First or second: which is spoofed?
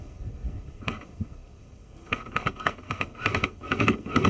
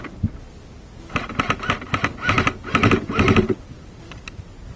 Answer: first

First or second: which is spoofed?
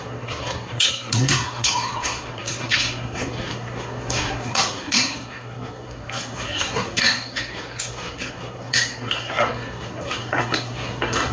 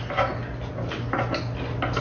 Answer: first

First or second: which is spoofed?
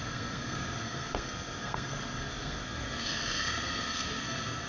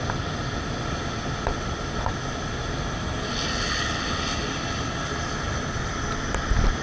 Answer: first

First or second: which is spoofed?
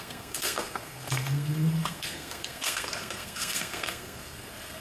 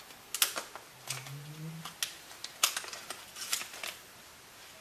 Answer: first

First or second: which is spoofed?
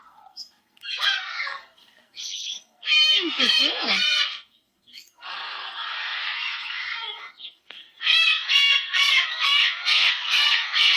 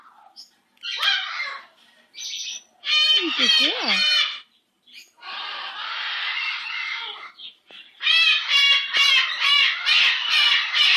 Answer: first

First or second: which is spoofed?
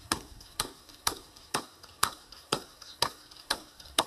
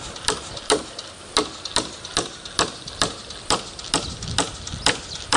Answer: first